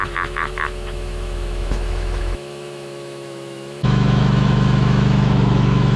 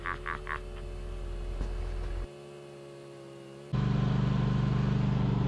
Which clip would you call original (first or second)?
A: second